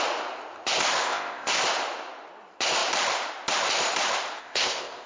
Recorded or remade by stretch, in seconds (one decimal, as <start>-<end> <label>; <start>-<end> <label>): 0.0-1.0 recorded; 1.0-1.6 remade; 1.6-4.4 recorded; 4.4-5.1 remade